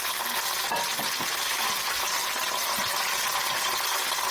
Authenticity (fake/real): fake